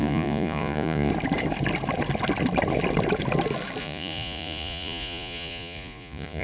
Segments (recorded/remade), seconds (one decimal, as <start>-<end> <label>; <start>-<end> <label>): 0.0-1.1 remade; 1.1-3.8 recorded; 3.8-6.4 remade